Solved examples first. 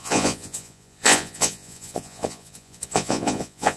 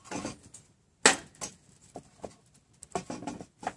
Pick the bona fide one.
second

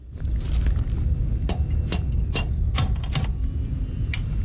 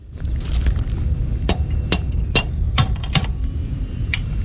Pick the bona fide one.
first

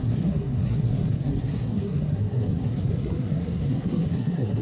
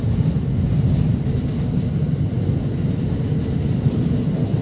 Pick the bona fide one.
second